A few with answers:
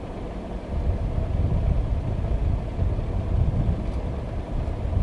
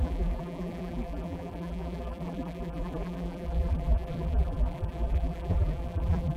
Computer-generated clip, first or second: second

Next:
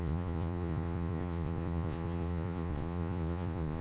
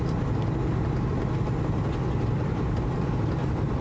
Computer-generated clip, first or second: first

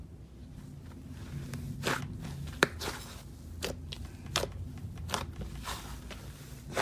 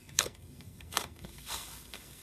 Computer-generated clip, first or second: second